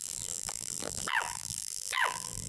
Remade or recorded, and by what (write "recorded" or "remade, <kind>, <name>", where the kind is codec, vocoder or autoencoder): remade, vocoder, BigVGAN v2